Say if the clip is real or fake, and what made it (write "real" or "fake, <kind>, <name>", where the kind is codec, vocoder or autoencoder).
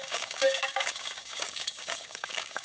fake, codec, DAC